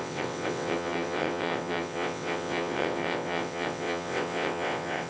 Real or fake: fake